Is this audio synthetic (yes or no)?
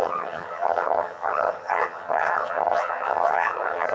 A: yes